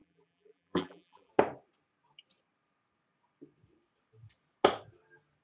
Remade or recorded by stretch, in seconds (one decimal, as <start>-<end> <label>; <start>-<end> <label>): 0.0-1.3 remade; 1.3-5.4 recorded